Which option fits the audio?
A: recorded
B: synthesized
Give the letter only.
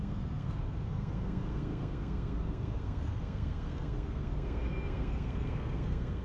B